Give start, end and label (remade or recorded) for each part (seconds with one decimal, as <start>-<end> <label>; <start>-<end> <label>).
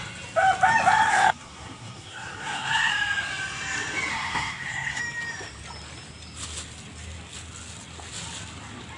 0.0-1.1 recorded; 1.1-2.9 remade; 2.9-4.1 recorded; 4.1-5.0 remade; 5.0-9.0 recorded